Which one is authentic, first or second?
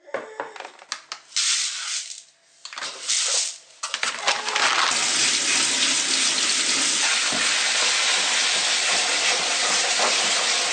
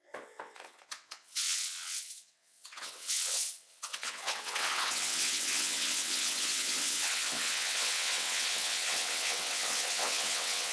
first